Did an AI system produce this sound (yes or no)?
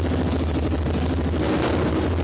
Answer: no